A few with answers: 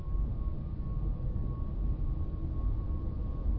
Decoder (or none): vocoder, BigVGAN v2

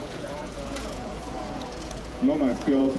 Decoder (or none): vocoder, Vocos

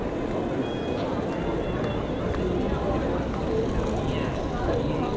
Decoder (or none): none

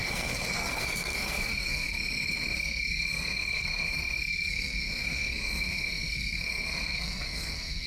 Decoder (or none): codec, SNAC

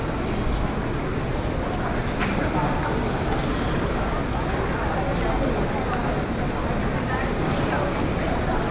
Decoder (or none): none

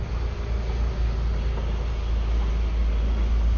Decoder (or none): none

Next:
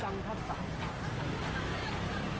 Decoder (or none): none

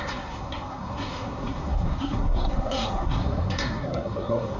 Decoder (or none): codec, SNAC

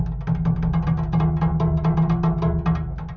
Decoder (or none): none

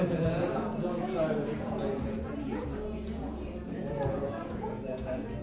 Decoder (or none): vocoder, Vocos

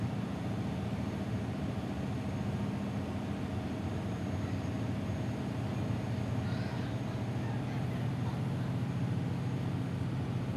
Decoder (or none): none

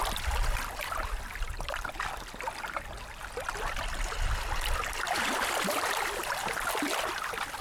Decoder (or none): none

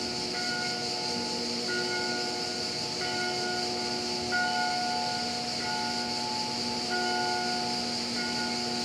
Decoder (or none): none